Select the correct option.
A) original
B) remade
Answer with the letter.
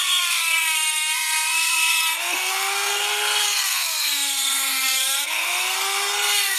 B